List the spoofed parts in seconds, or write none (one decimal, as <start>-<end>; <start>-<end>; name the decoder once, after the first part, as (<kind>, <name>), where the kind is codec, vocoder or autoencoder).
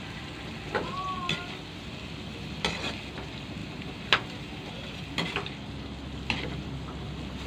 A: 3.6-4.7 (vocoder, BigVGAN v2)